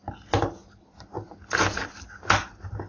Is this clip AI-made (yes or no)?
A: no